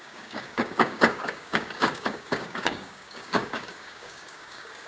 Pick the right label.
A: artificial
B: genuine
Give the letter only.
A